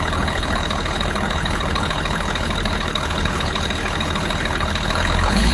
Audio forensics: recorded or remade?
remade